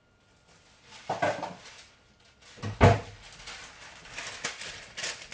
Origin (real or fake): real